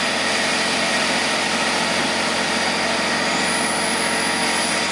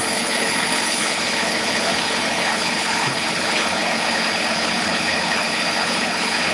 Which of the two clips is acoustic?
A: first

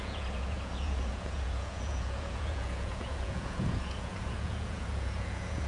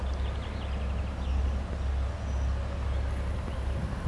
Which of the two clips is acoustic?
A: second